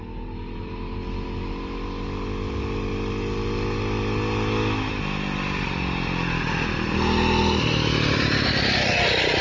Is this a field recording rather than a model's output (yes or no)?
yes